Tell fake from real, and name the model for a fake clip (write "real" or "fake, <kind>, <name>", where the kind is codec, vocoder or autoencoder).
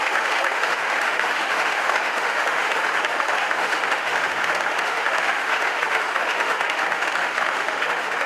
fake, autoencoder, DAC-VAE